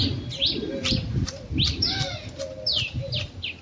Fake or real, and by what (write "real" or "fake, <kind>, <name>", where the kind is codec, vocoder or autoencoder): real